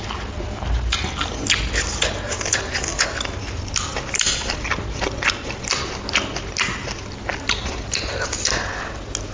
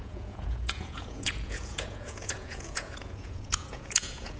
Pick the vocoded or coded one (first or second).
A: second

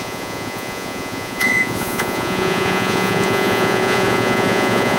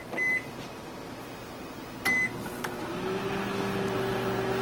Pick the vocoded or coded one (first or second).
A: first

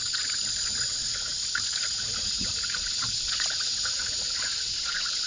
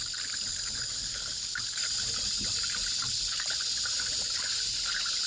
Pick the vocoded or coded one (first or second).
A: first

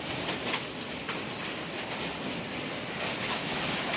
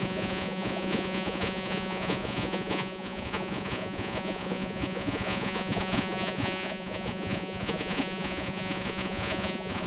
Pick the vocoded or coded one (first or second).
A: second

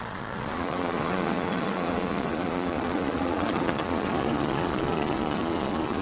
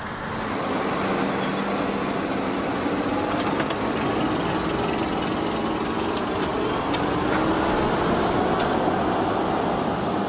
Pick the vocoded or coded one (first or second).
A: first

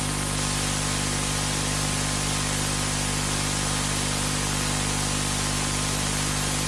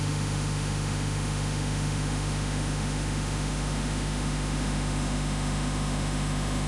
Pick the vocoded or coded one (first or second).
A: second